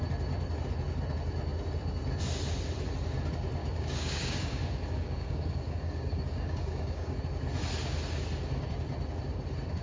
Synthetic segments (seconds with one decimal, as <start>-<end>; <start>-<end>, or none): 3.6-7.2